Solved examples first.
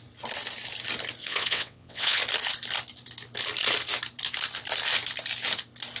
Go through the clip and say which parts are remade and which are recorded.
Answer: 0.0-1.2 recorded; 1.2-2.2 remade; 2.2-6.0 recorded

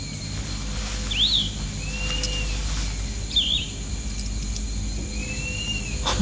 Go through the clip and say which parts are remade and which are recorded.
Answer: 0.0-6.2 recorded

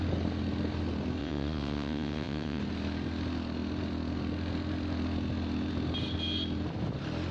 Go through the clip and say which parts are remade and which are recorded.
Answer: 0.0-1.2 recorded; 1.2-2.6 remade; 2.6-7.3 recorded

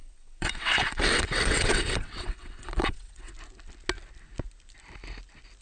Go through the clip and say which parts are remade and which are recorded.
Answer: 0.0-3.3 remade; 3.3-5.6 recorded